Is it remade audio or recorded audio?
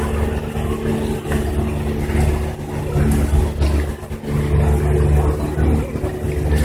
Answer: recorded